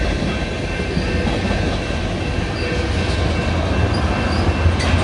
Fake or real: real